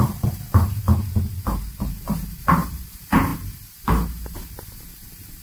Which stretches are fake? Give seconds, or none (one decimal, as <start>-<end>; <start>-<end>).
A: 0.0-0.9; 1.9-5.4